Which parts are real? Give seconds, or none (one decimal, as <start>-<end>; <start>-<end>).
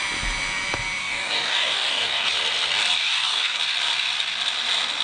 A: 0.0-1.0; 2.3-3.0; 3.6-5.0